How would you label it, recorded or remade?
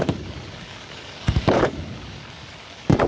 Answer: remade